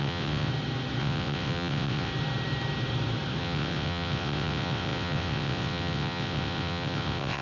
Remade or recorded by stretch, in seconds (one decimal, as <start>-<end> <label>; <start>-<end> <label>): 0.0-0.5 remade; 0.5-1.0 recorded; 1.0-2.1 remade; 2.1-3.4 recorded; 3.4-7.4 remade